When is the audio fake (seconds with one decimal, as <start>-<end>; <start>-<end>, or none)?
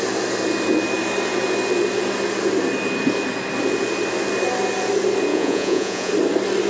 5.3-6.1